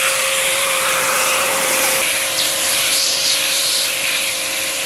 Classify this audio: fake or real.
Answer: fake